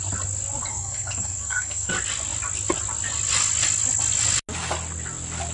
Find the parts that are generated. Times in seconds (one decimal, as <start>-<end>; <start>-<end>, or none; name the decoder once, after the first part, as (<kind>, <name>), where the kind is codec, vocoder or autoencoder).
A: 0.7-1.9 (codec, SNAC)